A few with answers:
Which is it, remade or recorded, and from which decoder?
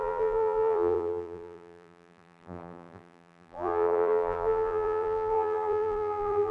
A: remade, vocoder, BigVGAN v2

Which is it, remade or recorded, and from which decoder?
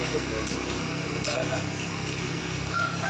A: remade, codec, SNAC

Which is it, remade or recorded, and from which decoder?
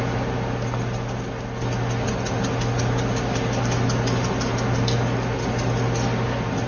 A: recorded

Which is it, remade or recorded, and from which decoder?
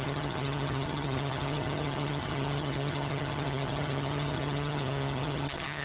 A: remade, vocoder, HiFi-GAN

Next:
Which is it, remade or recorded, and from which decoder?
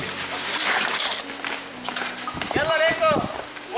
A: recorded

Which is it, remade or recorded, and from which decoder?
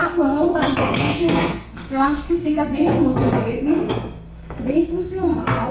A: remade, codec, SNAC